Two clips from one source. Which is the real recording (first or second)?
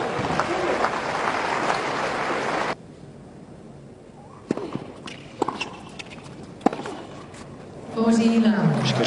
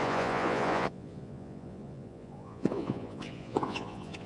first